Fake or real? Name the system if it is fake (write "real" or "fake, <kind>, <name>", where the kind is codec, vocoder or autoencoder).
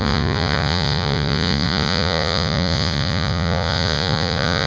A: fake, vocoder, Vocos